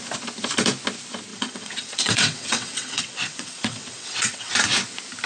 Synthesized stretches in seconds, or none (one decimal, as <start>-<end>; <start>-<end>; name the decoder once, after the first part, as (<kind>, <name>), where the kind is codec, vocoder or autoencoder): 1.3-4.5 (vocoder, WaveNeXt)

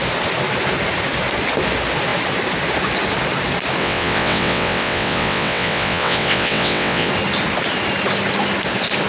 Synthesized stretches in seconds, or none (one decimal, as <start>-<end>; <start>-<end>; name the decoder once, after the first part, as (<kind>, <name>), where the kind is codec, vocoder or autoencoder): 3.8-7.1 (vocoder, WaveNeXt)

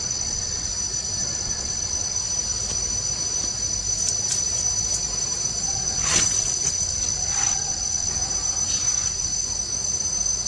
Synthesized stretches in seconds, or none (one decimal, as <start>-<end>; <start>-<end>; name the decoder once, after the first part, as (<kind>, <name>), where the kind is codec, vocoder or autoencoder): 0.0-0.7 (vocoder, WaveNeXt); 1.2-2.2; 5.7-8.2; 8.9-9.3

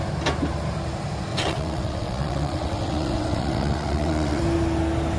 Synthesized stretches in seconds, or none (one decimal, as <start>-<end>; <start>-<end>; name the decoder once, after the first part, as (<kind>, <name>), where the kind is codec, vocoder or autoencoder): 1.3-4.4 (vocoder, WaveNeXt)

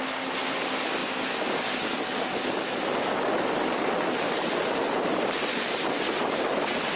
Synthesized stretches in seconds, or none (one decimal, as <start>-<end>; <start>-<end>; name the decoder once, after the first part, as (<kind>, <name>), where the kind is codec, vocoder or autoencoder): none

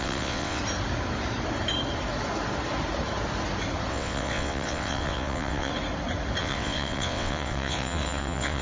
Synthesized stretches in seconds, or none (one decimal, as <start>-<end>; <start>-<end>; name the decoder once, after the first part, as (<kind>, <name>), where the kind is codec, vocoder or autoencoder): 0.0-0.6 (vocoder, WaveNeXt); 3.9-5.7; 6.4-8.6

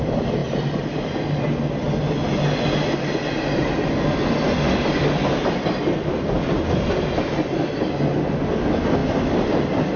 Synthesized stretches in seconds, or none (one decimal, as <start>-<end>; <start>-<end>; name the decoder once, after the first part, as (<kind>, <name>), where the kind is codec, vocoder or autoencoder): none

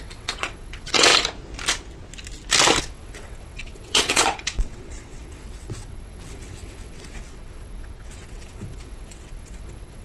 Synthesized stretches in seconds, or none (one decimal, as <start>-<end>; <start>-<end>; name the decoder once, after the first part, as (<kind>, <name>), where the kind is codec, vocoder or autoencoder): 0.0-1.1 (vocoder, WaveNeXt); 2.8-10.0